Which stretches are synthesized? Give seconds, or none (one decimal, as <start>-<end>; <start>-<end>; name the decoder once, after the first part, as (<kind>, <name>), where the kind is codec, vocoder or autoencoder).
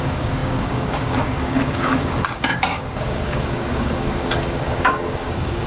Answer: 0.0-5.7 (codec, DAC)